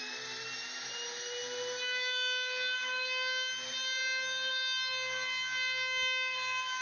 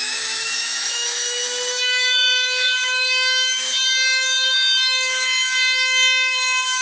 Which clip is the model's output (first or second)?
second